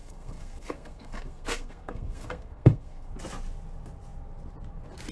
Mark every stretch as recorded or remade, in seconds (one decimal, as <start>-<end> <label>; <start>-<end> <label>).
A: 0.0-3.1 remade; 3.1-5.1 recorded